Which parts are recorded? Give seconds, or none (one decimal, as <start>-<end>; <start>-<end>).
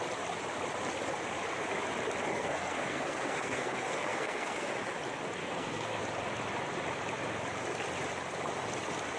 0.0-2.3; 4.7-5.4; 6.0-9.2